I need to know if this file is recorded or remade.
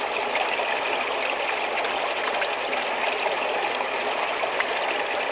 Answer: recorded